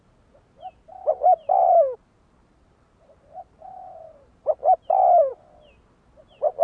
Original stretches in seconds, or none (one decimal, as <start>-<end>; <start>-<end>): 0.0-1.3; 5.3-6.6